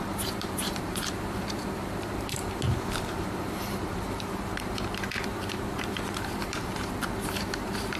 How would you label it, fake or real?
fake